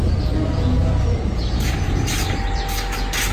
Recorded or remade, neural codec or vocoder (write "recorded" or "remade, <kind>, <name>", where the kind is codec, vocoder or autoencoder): recorded